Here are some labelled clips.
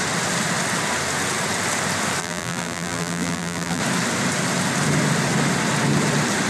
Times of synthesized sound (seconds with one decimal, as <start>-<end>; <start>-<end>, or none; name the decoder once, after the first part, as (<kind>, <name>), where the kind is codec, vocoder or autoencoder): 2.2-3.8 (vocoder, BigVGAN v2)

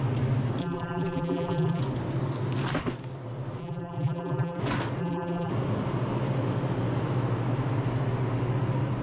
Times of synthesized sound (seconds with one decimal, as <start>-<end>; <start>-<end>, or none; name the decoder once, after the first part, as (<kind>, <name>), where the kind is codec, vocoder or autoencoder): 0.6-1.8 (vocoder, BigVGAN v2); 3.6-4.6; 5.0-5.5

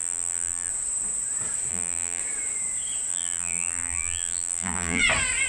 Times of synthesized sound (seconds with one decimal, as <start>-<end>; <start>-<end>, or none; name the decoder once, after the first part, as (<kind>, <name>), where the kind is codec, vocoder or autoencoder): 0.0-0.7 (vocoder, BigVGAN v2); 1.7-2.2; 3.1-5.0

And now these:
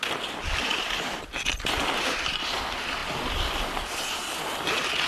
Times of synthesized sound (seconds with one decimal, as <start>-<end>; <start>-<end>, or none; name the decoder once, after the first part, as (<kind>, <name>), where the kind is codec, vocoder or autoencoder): none

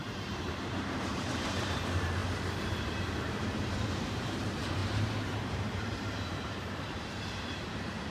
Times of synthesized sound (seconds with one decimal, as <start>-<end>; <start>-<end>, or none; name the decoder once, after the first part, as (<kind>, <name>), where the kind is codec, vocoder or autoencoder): 0.0-2.2 (vocoder, BigVGAN v2); 3.0-8.1

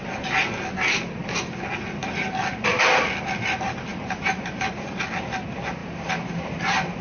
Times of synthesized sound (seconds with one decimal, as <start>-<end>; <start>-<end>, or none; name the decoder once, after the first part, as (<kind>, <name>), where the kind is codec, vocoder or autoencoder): 3.9-4.6 (vocoder, BigVGAN v2); 5.8-7.0

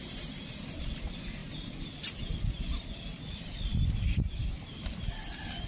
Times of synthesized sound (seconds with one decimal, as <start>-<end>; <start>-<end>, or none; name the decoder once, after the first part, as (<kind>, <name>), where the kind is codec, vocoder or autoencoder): none